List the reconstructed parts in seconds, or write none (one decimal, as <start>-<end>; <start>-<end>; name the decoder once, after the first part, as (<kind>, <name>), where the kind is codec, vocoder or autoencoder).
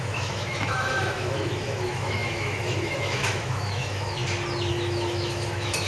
0.0-4.2 (autoencoder, DAC-VAE); 4.7-5.9